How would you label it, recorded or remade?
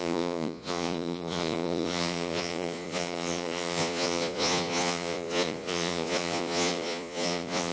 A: remade